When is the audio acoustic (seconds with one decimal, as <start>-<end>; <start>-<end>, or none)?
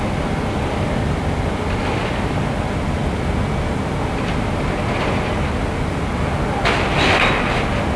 0.0-8.0